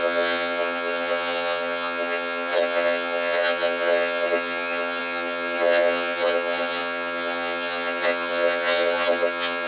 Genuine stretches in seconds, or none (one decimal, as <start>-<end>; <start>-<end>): none